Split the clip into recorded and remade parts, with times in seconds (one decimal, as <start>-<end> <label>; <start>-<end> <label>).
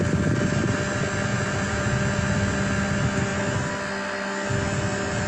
0.0-1.3 recorded; 1.3-2.0 remade; 2.0-5.3 recorded